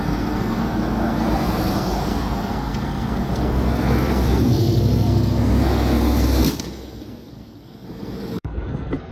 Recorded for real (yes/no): no